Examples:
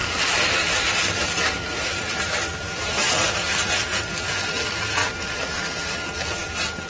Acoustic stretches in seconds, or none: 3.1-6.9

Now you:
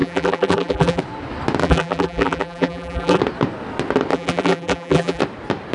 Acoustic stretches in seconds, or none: 1.0-1.6; 3.2-4.1; 5.2-5.7

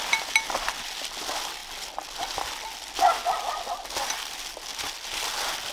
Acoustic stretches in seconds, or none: 0.0-5.7